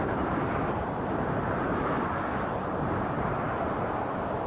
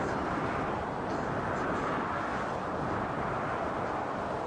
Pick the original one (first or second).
second